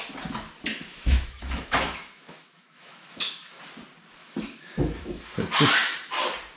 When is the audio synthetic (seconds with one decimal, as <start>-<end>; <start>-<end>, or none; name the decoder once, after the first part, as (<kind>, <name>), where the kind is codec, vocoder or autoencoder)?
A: 0.7-3.6 (autoencoder, DAC-VAE); 4.2-5.2